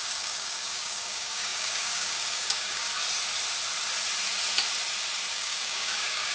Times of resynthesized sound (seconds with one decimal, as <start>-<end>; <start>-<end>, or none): 0.0-2.9; 5.3-6.3